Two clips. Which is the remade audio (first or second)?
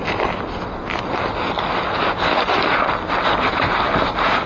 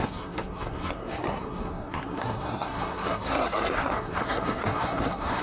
second